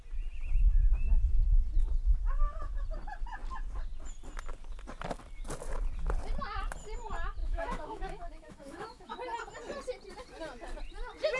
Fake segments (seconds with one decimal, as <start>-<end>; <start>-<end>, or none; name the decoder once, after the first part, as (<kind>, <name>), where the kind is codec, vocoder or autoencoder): 7.4-9.2 (autoencoder, DAC-VAE)